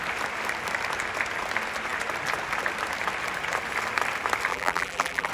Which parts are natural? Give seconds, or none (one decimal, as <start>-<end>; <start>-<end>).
0.0-4.5